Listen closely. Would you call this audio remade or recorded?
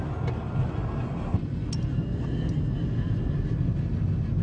recorded